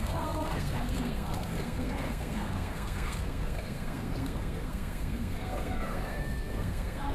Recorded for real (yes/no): no